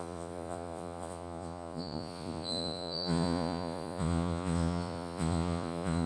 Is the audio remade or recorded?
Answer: remade